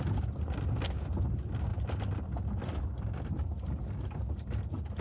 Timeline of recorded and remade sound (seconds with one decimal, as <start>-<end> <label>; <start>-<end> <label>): 0.0-5.0 recorded